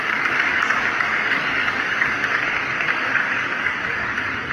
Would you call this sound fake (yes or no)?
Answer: yes